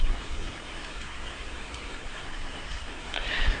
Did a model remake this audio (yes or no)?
yes